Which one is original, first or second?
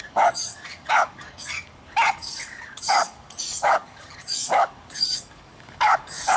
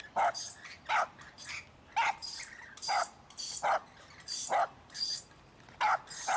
second